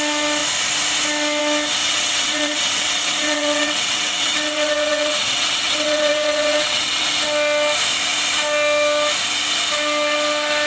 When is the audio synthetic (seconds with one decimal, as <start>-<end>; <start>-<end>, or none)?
1.8-7.0